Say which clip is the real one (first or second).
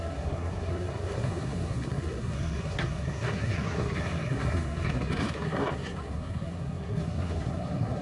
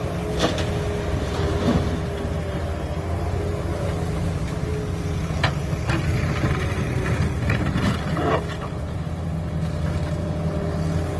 second